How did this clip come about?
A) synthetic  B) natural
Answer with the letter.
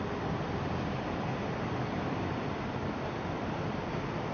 B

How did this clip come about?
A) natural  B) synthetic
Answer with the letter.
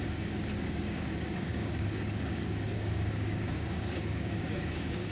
B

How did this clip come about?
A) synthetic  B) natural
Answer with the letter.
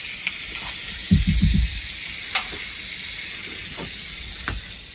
B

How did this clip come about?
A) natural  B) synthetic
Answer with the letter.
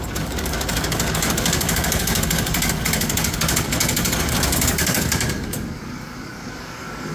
B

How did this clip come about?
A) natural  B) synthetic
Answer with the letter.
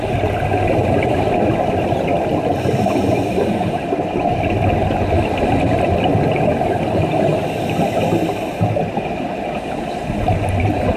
A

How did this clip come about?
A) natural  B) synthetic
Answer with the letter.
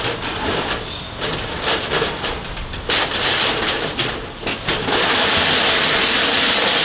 A